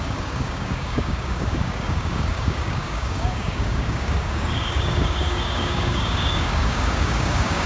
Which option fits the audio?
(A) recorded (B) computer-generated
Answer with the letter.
B